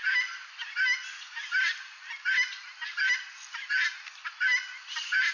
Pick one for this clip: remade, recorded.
recorded